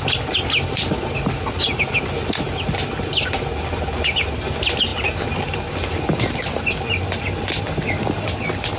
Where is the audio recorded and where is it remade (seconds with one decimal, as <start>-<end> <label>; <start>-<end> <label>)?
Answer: 0.0-8.8 recorded